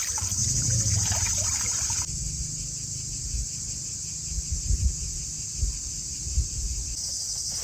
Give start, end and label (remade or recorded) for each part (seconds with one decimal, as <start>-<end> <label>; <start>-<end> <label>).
0.0-7.6 recorded